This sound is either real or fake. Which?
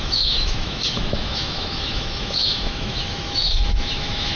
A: fake